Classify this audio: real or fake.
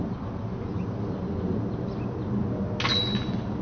real